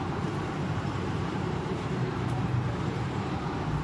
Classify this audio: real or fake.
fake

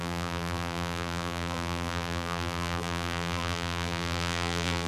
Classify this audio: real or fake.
fake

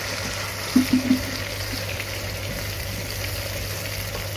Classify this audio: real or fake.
real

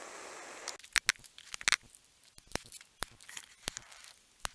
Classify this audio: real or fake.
real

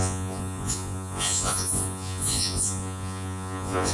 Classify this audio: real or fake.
fake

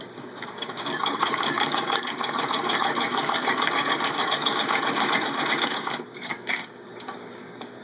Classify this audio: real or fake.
fake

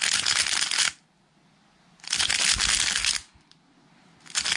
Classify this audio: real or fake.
real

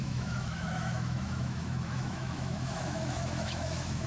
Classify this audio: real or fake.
fake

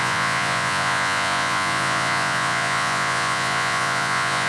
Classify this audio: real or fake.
fake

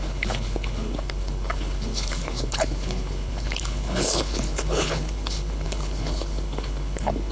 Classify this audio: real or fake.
fake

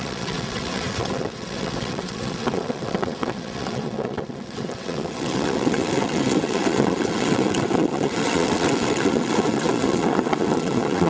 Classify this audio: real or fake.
fake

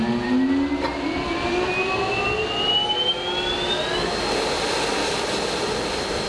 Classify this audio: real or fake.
real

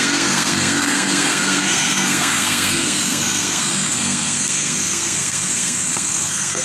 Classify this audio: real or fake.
fake